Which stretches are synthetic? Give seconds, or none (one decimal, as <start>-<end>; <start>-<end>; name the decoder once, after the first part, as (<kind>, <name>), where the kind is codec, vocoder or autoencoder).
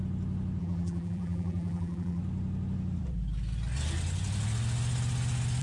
0.6-2.2 (vocoder, BigVGAN v2)